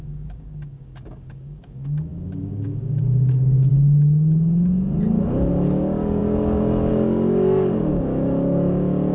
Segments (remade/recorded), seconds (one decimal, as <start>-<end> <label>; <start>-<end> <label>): 0.0-3.7 remade; 3.7-5.5 recorded; 5.5-9.1 remade